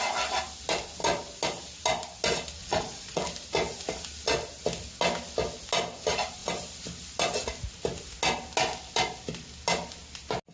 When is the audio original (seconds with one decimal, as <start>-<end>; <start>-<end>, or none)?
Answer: 0.0-2.6; 3.2-10.5